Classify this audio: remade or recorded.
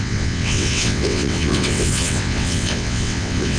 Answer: remade